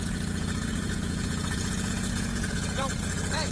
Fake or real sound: fake